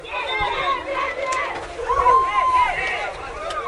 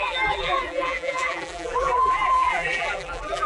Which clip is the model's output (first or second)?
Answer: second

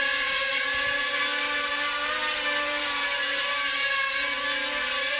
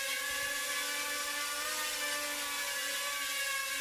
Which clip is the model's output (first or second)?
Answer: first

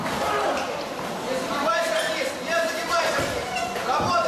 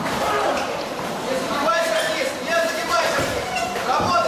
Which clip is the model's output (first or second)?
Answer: second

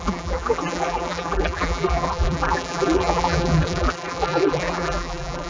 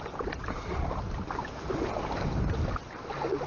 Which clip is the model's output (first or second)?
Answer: first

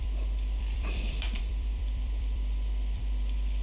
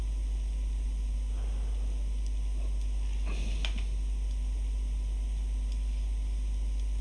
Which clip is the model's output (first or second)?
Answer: first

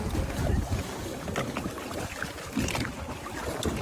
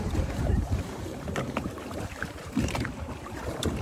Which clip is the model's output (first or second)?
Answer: second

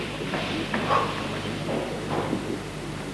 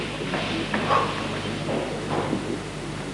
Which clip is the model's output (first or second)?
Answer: first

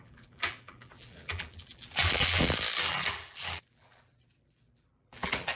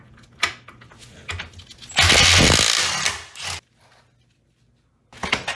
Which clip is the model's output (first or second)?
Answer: first